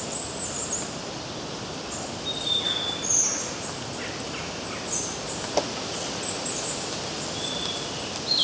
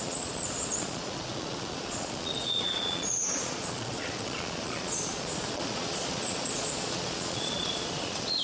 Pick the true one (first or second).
first